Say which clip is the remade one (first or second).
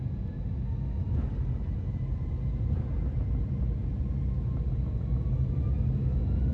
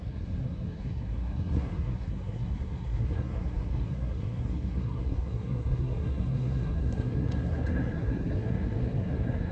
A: second